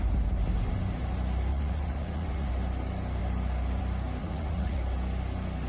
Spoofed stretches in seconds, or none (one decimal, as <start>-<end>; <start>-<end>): 1.5-2.5; 4.2-4.8

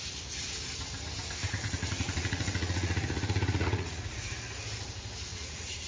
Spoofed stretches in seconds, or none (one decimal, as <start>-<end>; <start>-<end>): 1.4-4.4; 5.3-5.9

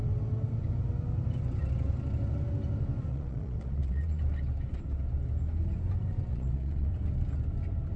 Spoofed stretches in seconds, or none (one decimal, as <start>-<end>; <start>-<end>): 3.1-4.2; 6.3-6.9

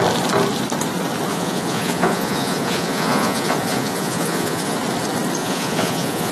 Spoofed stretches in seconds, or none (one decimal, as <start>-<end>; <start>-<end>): 1.3-4.8; 5.4-6.3